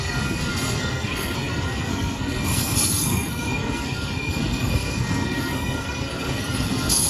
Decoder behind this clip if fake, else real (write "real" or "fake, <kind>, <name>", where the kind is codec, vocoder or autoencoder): fake, codec, SNAC